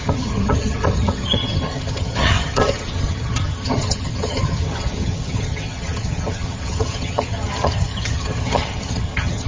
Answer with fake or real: fake